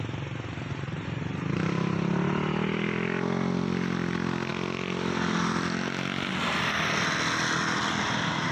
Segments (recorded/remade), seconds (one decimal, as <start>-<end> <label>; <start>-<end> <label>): 0.0-8.5 recorded